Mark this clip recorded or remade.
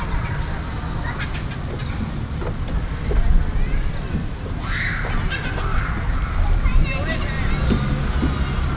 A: recorded